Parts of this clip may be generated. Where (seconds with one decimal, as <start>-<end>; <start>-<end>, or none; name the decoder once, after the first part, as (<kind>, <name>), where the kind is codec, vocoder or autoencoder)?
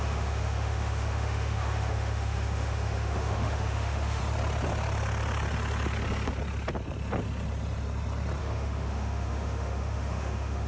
0.0-4.2 (autoencoder, DAC-VAE); 8.4-10.7